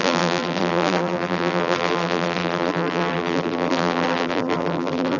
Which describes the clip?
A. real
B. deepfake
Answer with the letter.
B